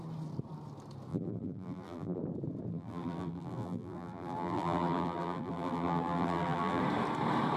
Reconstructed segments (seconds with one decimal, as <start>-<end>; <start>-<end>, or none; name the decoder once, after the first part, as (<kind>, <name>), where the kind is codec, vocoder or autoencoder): 1.1-2.2 (vocoder, BigVGAN v2); 2.7-6.8